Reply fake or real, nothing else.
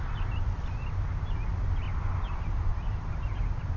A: real